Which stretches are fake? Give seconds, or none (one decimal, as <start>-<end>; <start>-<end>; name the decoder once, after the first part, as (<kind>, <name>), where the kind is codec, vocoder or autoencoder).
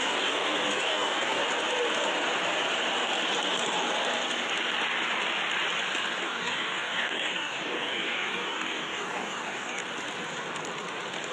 0.0-1.4 (codec, DAC); 6.2-9.8